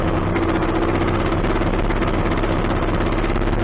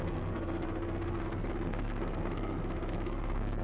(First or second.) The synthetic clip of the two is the second